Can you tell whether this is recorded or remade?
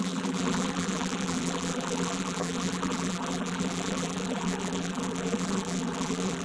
remade